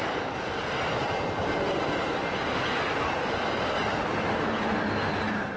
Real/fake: real